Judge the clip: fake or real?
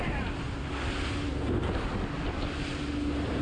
real